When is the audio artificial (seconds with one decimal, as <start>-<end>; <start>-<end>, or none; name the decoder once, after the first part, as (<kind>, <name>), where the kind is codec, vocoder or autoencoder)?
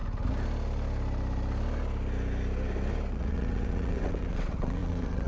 3.1-5.3 (vocoder, WaveNeXt)